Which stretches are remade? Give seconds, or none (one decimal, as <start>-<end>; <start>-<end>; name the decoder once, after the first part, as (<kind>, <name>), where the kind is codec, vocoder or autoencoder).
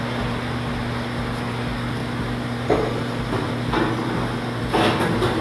none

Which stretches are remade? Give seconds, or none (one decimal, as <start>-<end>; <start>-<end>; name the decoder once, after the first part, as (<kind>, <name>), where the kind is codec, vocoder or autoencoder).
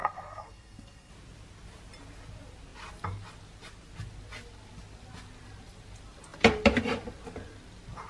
0.0-1.1 (codec, SNAC)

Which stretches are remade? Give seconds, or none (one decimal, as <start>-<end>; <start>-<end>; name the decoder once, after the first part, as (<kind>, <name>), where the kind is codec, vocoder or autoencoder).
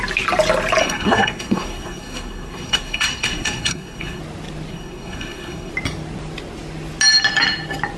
0.8-4.2 (codec, SNAC); 4.7-5.7